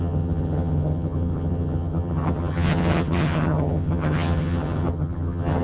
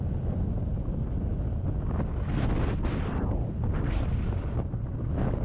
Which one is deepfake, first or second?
first